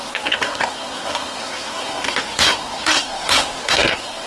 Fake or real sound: fake